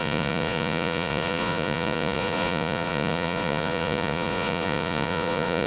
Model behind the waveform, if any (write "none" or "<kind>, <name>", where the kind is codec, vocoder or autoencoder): vocoder, Vocos